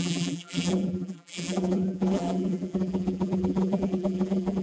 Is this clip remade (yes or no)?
yes